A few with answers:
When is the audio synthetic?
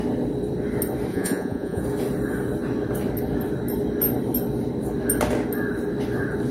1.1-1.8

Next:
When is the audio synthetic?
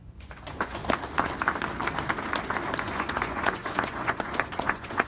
0.0-0.8; 2.8-5.1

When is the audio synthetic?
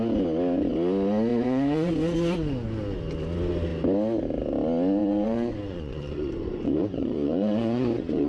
1.3-1.9; 5.0-8.3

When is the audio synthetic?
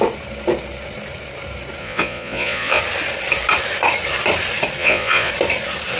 1.8-2.8; 4.8-5.3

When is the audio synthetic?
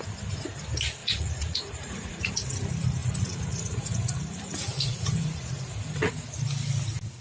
1.0-2.3; 3.0-6.1